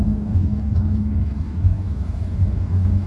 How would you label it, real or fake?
fake